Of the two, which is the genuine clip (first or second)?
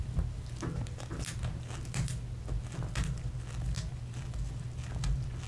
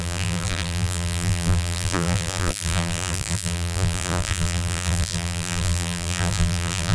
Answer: first